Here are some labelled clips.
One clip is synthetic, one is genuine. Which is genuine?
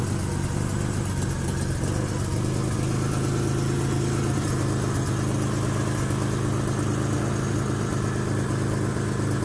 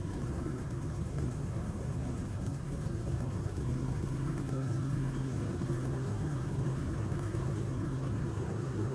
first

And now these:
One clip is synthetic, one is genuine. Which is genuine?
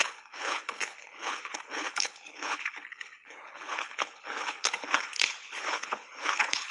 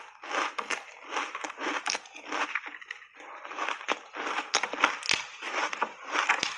second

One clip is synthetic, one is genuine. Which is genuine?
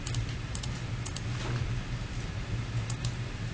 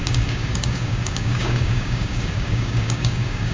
first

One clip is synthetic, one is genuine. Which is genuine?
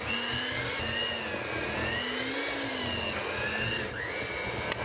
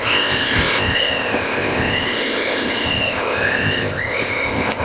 first